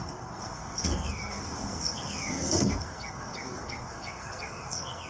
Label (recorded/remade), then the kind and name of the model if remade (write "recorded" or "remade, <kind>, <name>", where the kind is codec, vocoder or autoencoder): remade, codec, SNAC